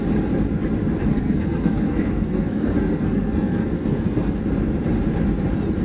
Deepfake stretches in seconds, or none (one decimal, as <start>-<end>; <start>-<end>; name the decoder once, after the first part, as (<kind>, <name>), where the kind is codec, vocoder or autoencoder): 1.1-4.4 (codec, SNAC)